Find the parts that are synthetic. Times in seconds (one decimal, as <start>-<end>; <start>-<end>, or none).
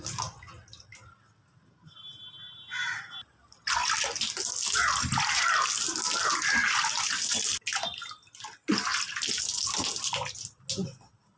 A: none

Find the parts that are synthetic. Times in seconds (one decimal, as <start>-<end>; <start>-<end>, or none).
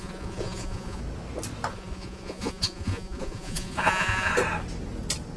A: 0.0-1.0; 1.7-4.3